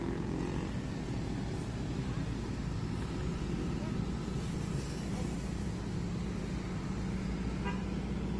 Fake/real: real